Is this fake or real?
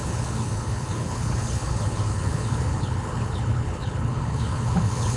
fake